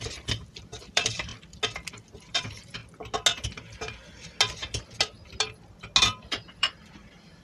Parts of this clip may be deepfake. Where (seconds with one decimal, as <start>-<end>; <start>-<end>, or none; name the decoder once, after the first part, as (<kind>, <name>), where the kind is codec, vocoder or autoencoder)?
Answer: 0.0-1.3 (vocoder, BigVGAN v2); 1.9-2.8; 6.0-7.4